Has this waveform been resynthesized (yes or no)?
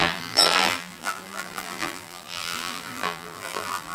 yes